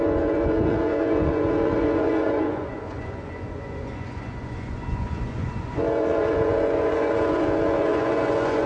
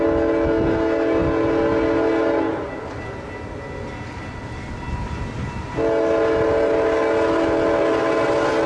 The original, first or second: second